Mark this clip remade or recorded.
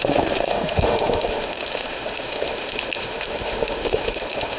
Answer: remade